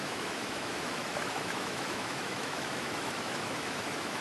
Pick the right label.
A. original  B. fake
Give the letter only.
B